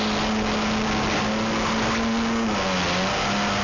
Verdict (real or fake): real